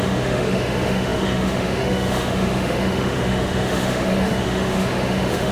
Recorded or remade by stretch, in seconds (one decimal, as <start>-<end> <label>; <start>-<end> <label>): 0.0-5.5 remade